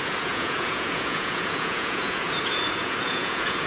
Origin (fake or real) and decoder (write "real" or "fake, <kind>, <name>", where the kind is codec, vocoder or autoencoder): fake, vocoder, Vocos